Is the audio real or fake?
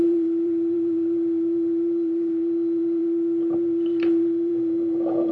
fake